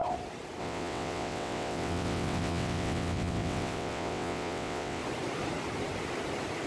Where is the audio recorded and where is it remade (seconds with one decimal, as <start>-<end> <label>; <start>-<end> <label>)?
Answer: 0.0-0.6 recorded; 0.6-5.0 remade; 5.0-6.7 recorded